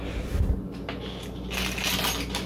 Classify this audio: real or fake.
real